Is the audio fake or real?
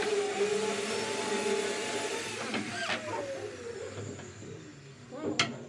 real